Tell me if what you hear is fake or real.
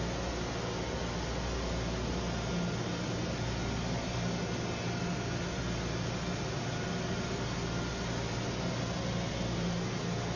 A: real